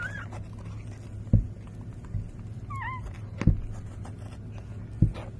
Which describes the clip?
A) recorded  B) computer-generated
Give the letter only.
A